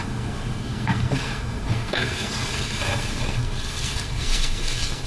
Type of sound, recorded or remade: remade